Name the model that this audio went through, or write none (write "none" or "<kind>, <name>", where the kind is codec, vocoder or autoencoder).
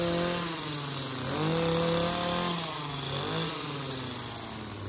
none